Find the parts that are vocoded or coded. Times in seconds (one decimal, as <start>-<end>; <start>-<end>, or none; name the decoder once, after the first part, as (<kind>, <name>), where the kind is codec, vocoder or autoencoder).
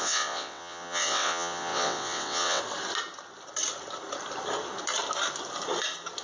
0.0-2.6 (vocoder, WaveNeXt)